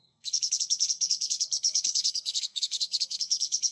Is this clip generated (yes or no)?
yes